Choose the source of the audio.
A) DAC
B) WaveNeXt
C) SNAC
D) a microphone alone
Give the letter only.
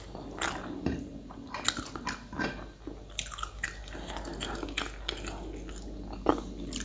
D